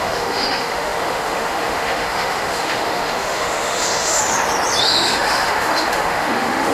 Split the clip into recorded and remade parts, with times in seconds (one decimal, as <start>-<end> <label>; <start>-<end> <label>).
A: 0.0-4.2 remade; 4.2-4.8 recorded; 4.8-6.7 remade